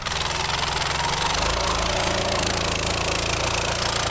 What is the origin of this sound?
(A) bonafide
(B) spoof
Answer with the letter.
A